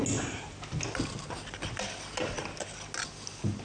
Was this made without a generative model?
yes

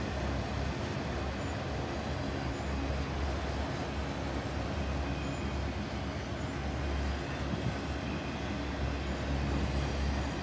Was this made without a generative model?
yes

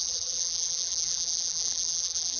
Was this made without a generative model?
no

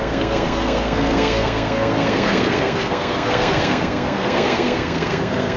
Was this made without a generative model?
no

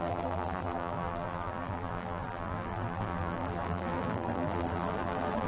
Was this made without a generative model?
no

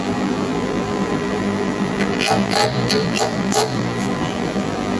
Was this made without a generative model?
no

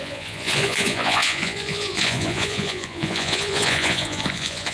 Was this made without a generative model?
no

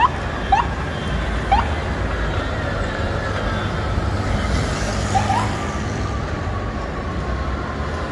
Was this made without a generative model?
yes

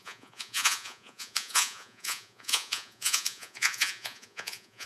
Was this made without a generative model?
no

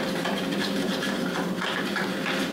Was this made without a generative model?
yes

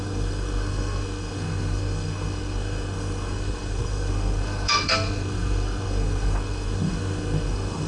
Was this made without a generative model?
no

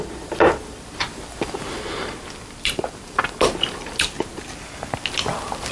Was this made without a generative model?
yes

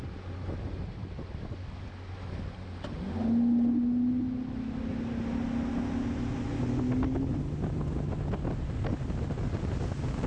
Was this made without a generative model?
yes